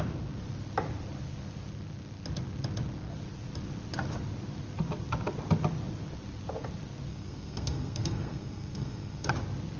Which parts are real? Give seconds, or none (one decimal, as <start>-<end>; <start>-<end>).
0.0-7.1; 9.3-9.8